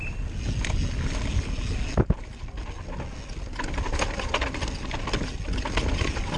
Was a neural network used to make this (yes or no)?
no